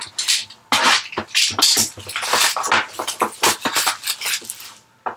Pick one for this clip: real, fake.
real